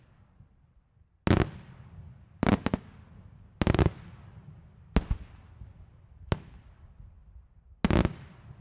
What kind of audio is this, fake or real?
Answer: real